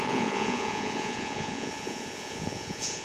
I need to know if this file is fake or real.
fake